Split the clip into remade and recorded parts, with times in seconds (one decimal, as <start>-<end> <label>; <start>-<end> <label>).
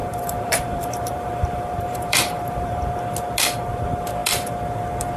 0.0-2.8 remade; 2.8-5.2 recorded